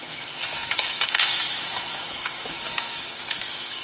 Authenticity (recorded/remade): remade